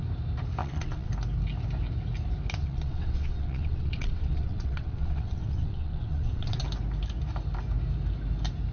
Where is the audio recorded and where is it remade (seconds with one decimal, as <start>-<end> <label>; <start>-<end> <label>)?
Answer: 0.0-0.6 recorded; 0.6-1.1 remade; 1.1-2.6 recorded; 2.6-6.6 remade; 6.6-8.7 recorded